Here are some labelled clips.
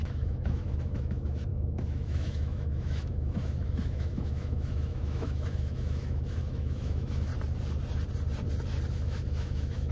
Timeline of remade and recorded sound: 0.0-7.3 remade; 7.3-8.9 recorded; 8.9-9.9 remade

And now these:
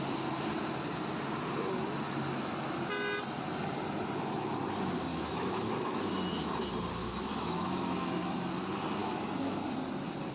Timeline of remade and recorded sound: 0.0-5.1 recorded; 5.1-6.0 remade; 6.0-7.0 recorded; 7.0-8.5 remade; 8.5-9.0 recorded; 9.0-9.5 remade; 9.5-10.3 recorded

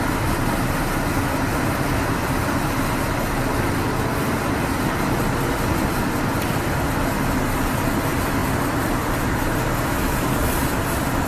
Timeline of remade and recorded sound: 0.0-11.3 recorded

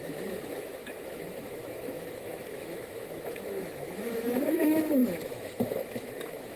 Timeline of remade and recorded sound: 0.0-6.6 remade

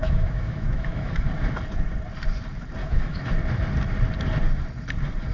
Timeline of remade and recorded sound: 0.0-1.3 remade; 1.3-2.8 recorded; 2.8-3.3 remade; 3.3-5.3 recorded